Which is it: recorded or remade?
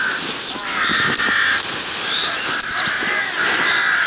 recorded